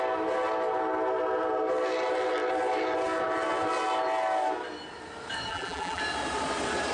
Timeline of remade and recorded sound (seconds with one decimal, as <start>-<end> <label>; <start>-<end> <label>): 0.0-5.5 recorded; 5.5-6.0 remade; 6.0-6.9 recorded